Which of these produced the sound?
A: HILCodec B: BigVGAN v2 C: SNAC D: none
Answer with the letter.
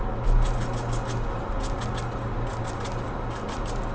D